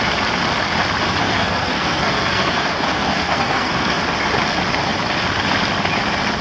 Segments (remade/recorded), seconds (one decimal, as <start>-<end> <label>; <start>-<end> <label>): 0.0-1.2 recorded; 1.2-4.0 remade; 4.0-6.4 recorded